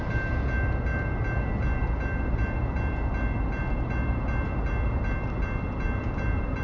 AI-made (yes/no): no